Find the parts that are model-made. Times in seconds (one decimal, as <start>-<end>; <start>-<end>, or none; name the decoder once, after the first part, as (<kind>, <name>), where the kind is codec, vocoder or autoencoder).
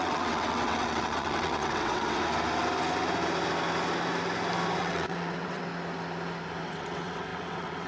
0.0-2.2 (vocoder, WaveNeXt); 4.8-5.7; 6.6-7.9